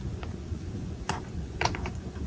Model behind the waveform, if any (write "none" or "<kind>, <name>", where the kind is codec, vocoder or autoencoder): vocoder, Vocos